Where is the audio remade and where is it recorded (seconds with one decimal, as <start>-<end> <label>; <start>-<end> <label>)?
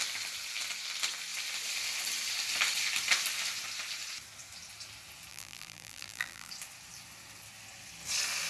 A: 0.0-5.3 recorded; 5.3-6.5 remade; 6.5-8.5 recorded